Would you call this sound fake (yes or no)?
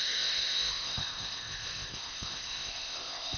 yes